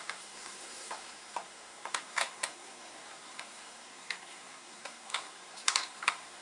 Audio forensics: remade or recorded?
remade